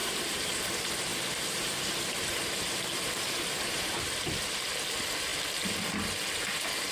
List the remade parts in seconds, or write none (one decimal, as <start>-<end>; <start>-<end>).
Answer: 0.0-0.6; 1.1-4.0